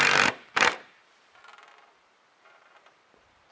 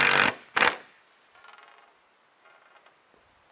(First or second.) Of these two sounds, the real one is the second